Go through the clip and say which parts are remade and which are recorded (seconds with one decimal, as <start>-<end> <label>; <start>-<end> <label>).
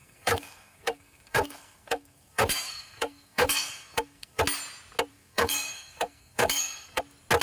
0.0-4.4 remade; 4.4-5.1 recorded; 5.1-7.0 remade; 7.0-7.4 recorded